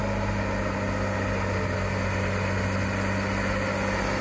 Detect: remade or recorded recorded